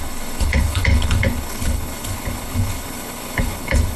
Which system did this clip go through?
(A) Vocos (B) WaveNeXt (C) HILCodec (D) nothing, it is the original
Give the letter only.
C